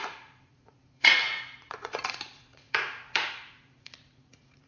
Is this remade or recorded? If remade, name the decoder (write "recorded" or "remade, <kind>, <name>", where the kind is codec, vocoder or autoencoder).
remade, vocoder, Vocos